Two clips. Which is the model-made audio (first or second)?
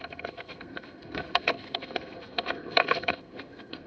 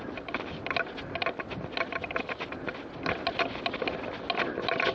first